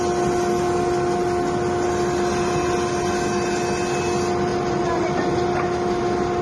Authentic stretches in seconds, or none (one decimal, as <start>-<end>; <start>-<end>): 0.0-6.4